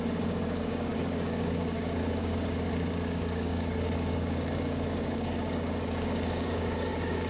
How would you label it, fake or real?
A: fake